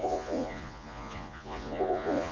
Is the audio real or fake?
fake